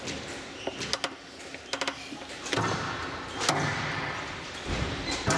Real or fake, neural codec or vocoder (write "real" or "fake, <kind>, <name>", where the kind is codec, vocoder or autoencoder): real